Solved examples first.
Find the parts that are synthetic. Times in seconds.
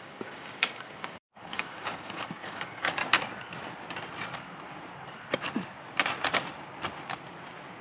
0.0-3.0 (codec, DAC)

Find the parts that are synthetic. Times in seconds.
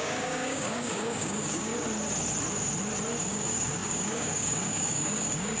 0.0-1.7 (codec, DAC); 3.2-5.6